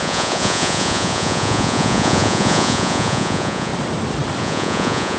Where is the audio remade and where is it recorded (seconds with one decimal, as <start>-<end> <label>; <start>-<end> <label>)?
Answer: 0.0-3.7 remade; 3.7-4.4 recorded; 4.4-5.2 remade